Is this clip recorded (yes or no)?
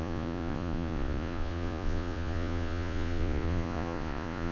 no